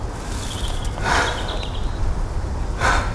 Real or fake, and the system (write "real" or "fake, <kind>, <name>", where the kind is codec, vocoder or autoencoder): real